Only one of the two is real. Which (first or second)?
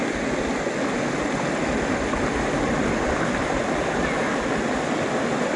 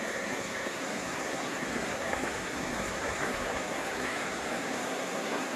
first